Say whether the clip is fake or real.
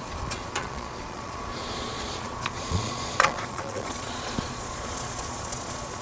fake